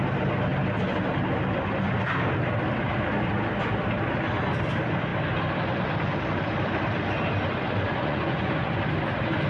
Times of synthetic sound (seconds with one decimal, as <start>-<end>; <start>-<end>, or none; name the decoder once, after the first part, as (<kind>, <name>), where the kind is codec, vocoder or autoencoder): 7.9-8.8 (vocoder, Vocos)